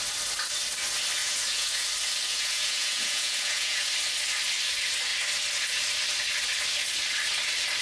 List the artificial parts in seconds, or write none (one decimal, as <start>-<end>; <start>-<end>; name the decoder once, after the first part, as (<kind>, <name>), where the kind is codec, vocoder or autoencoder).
1.2-1.9 (vocoder, Vocos); 2.3-3.9